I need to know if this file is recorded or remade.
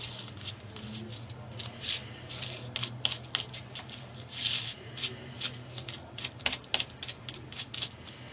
recorded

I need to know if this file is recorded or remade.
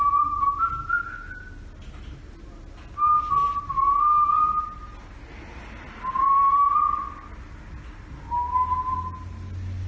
recorded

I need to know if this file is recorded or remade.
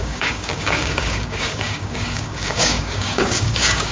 remade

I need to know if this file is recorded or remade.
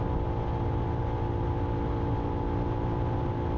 recorded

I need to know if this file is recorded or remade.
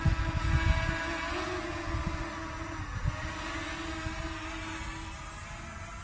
recorded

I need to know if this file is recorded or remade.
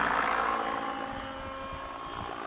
recorded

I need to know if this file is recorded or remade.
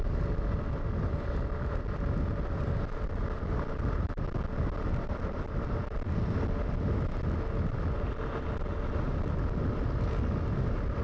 recorded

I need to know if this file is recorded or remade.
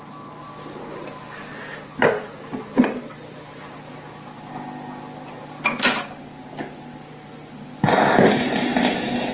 recorded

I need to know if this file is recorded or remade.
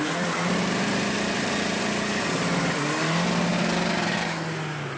recorded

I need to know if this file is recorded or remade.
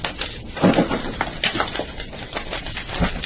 recorded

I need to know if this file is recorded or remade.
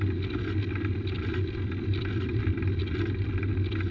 recorded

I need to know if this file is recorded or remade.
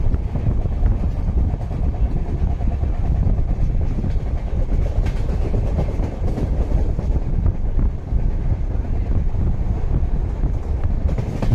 recorded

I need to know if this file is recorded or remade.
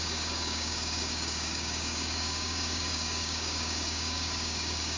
remade